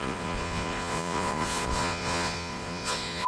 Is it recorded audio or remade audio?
remade